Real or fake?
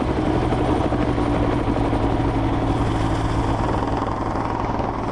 real